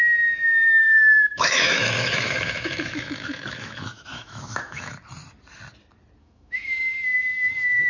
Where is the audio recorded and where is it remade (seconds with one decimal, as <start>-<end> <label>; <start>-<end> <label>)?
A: 0.0-0.8 recorded; 0.8-4.9 remade; 4.9-6.2 recorded; 6.2-7.9 remade

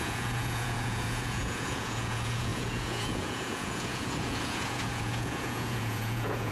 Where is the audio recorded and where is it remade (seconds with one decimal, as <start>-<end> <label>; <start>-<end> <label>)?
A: 0.0-6.5 remade